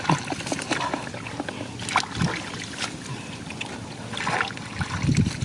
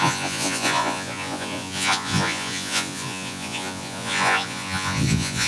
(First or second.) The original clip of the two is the first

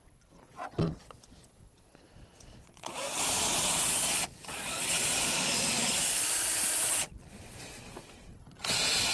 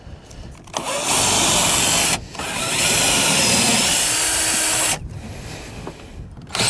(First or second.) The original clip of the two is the second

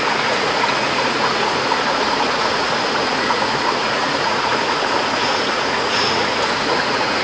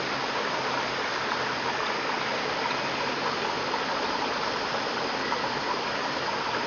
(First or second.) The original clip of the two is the second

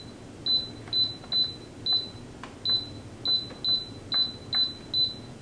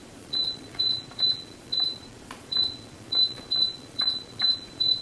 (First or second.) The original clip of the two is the first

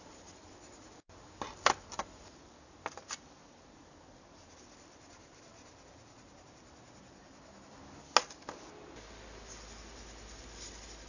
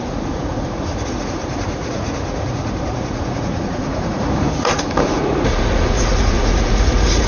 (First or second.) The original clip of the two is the first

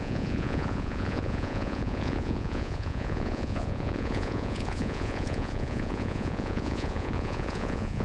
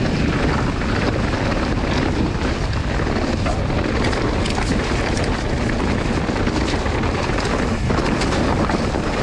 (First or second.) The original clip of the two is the second